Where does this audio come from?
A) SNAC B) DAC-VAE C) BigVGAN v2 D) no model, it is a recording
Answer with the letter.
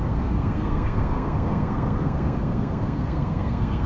A